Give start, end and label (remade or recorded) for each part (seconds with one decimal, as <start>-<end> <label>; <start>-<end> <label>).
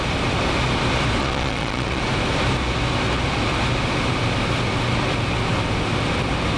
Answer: 0.0-1.2 recorded; 1.2-2.0 remade; 2.0-6.6 recorded